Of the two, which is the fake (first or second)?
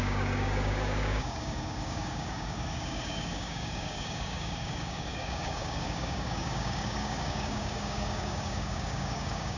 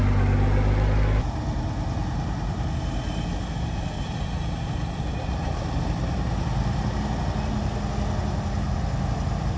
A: first